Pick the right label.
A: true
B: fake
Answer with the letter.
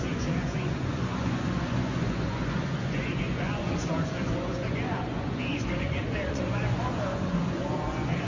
B